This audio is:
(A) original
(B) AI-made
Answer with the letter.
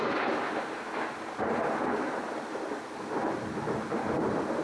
A